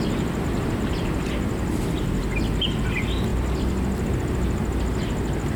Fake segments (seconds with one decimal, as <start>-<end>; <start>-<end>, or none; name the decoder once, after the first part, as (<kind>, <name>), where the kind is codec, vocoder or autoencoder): none